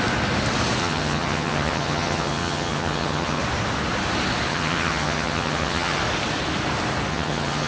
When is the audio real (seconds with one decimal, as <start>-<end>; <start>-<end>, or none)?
0.0-0.8; 3.4-4.5; 6.0-7.1